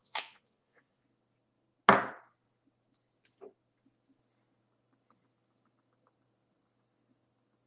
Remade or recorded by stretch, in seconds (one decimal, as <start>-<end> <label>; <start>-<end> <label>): 0.0-1.0 remade; 1.0-7.7 recorded